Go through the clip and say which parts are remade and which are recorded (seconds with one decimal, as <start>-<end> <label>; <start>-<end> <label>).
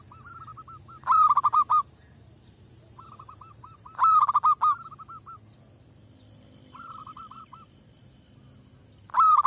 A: 0.0-0.5 recorded; 0.5-4.3 remade; 4.3-9.5 recorded